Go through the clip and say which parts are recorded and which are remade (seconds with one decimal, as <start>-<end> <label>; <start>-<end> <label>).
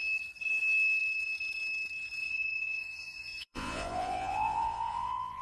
0.0-2.2 recorded; 2.2-5.4 remade